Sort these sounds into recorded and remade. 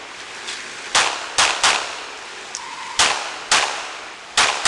recorded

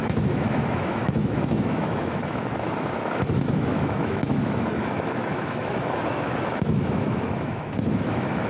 remade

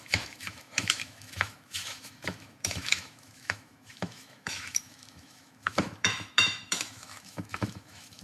remade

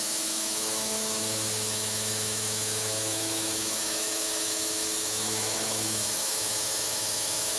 remade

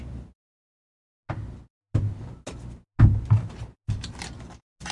recorded